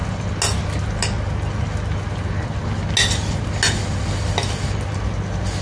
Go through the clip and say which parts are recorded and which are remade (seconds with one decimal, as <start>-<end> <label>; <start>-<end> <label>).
0.0-5.6 recorded